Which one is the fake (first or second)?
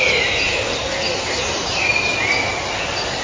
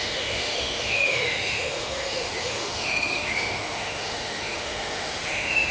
second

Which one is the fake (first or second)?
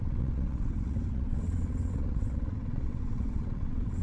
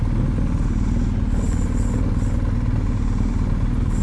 first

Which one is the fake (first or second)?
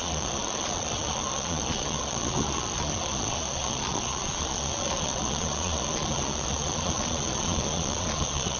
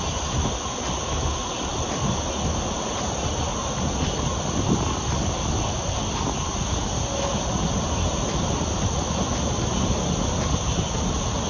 first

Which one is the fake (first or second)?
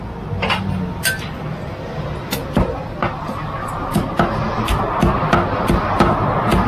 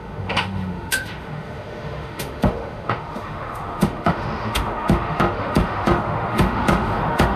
second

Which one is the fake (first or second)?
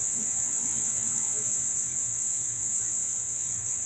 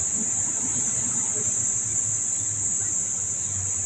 first